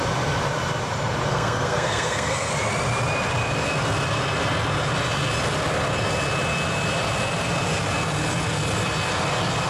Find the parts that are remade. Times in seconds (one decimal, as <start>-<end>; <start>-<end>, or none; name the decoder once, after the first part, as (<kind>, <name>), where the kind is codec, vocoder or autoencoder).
1.3-2.5 (codec, SNAC)